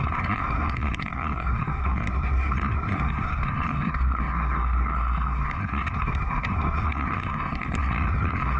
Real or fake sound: fake